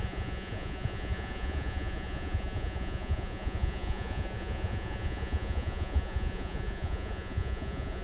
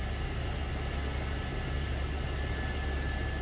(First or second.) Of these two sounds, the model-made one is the first